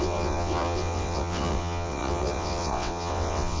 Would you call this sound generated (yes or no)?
yes